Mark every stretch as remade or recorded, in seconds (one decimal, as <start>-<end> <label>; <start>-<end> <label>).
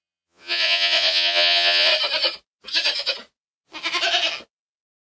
0.0-1.9 remade; 1.9-5.1 recorded